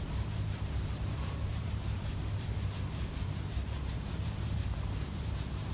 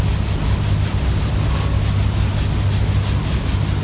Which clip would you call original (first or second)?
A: second